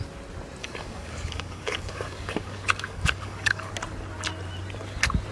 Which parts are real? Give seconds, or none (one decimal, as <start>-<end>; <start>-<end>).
0.0-0.6; 3.7-5.3